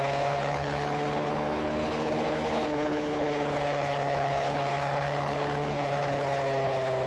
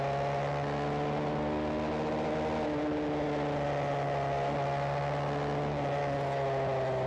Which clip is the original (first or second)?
second